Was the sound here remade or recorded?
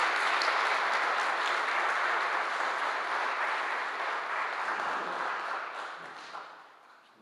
recorded